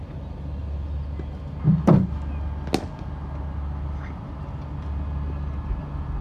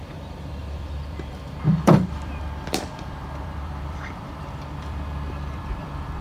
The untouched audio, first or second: first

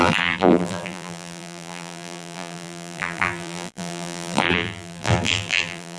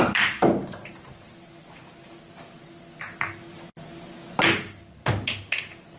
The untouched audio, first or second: second